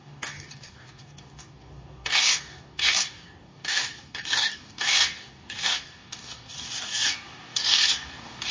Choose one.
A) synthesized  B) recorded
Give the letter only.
A